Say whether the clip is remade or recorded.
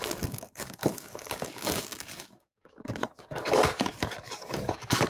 remade